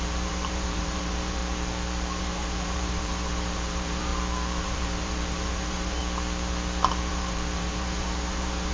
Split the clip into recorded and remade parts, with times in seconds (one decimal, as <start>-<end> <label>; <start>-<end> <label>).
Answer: 0.0-1.4 remade; 1.4-2.2 recorded; 2.2-4.1 remade; 4.1-4.6 recorded; 4.6-6.0 remade; 6.0-7.1 recorded; 7.1-8.7 remade

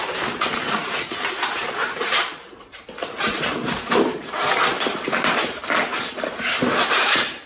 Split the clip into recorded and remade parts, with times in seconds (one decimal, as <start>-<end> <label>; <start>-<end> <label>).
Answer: 0.0-5.6 remade; 5.6-6.9 recorded; 6.9-7.5 remade

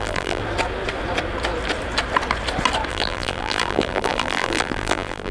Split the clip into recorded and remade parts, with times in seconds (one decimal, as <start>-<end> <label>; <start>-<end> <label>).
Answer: 0.0-0.4 remade; 0.4-2.9 recorded; 2.9-5.3 remade

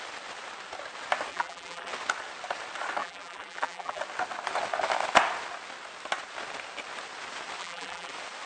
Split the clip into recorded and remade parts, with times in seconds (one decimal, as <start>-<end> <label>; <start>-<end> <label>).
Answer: 0.0-1.3 recorded; 1.3-1.9 remade; 1.9-3.0 recorded; 3.0-4.0 remade; 4.0-7.6 recorded; 7.6-8.1 remade; 8.1-8.5 recorded

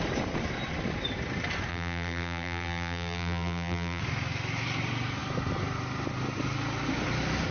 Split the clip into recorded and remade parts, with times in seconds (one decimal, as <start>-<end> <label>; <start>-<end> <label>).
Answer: 0.0-1.7 recorded; 1.7-4.0 remade; 4.0-7.5 recorded

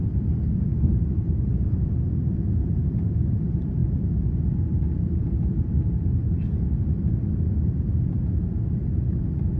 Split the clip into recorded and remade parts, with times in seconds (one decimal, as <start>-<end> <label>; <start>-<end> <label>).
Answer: 0.0-3.8 recorded; 3.8-7.1 remade; 7.1-9.6 recorded

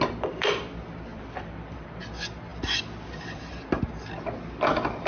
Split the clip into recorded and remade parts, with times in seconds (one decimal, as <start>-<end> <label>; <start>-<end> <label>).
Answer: 0.0-1.1 recorded; 1.1-2.0 remade; 2.0-2.5 recorded; 2.5-3.8 remade; 3.8-5.1 recorded

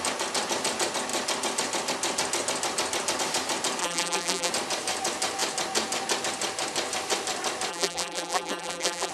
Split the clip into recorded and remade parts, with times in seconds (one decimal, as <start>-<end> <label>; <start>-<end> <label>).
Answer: 0.0-3.8 recorded; 3.8-4.5 remade; 4.5-7.7 recorded; 7.7-9.1 remade